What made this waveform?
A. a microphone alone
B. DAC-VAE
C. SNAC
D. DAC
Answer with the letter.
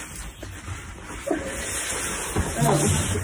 A